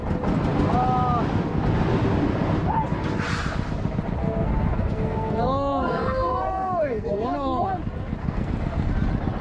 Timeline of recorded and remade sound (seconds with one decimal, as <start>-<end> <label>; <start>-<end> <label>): 0.0-4.2 recorded; 4.2-7.7 remade; 7.7-8.2 recorded; 8.2-8.9 remade; 8.9-9.4 recorded